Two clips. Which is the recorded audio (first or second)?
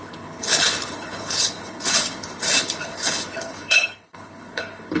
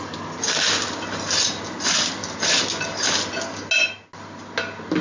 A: second